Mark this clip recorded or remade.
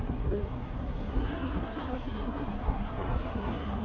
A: remade